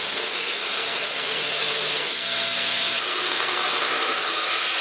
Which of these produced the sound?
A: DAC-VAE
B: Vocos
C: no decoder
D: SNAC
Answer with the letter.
D